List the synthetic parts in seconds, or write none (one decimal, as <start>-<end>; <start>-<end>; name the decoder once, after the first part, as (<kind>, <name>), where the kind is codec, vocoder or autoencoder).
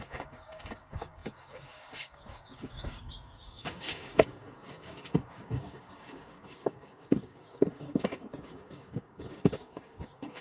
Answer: 0.0-10.4 (codec, DAC)